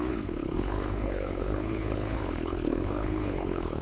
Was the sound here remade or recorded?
remade